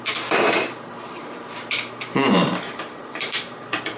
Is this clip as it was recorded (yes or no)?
no